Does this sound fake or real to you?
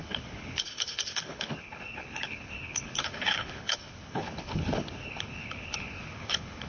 fake